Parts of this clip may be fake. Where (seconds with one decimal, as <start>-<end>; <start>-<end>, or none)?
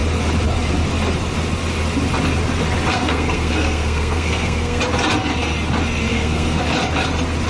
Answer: 2.9-4.8; 6.1-6.6